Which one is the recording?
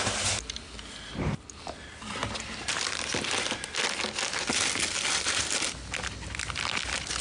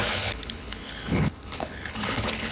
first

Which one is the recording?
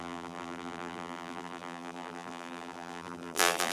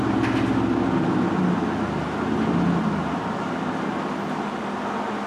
second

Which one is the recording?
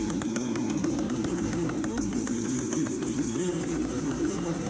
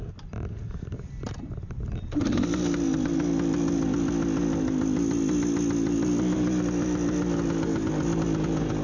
second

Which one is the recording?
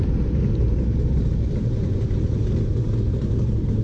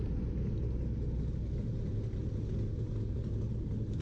second